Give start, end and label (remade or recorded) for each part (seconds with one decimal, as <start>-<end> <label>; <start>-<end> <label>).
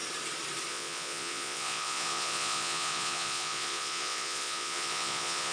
0.0-0.7 recorded; 0.7-5.5 remade